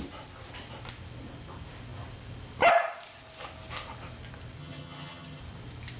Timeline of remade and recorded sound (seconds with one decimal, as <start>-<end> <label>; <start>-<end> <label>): 0.0-4.6 recorded; 4.6-5.4 remade; 5.4-6.0 recorded